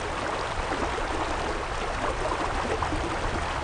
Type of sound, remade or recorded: recorded